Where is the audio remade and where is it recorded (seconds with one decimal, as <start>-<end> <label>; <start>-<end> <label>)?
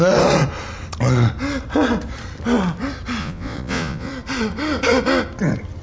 0.0-3.2 recorded; 3.2-4.1 remade; 4.1-5.8 recorded